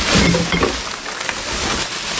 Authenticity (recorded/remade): recorded